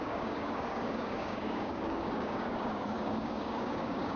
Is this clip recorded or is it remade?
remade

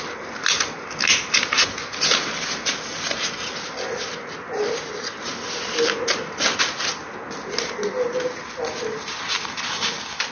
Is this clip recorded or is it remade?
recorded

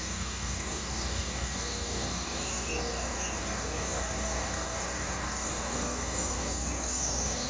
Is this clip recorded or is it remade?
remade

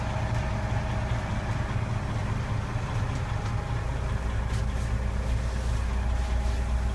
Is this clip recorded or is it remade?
recorded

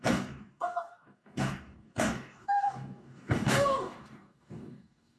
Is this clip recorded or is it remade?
remade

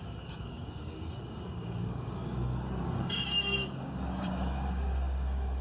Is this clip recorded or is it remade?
remade